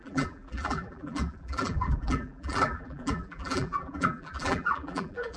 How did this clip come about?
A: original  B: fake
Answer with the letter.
B